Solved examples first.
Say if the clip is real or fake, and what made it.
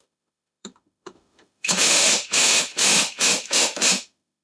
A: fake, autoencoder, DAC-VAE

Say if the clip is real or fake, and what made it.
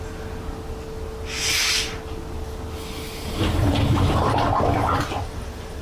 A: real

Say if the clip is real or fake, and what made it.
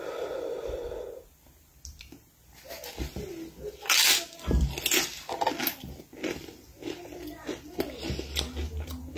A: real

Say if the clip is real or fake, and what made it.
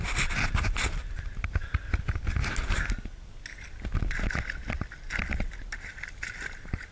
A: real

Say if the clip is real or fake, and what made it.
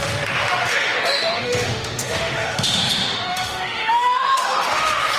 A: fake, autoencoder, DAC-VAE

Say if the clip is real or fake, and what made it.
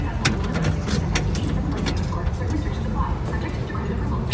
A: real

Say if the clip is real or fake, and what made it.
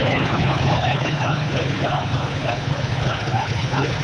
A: fake, codec, HILCodec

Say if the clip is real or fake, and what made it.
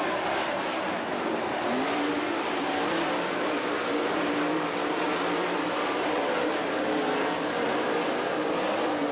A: fake, vocoder, BigVGAN v2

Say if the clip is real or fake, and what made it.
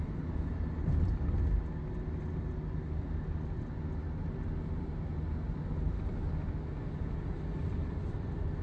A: real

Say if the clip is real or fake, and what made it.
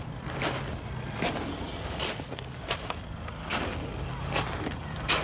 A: real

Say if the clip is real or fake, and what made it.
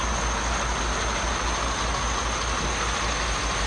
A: real